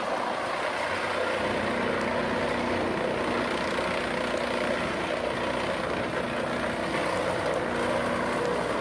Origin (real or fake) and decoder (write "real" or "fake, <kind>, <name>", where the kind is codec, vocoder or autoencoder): real